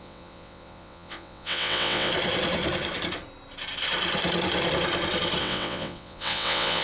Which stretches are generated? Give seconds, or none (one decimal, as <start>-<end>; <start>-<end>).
0.0-2.1; 5.4-6.8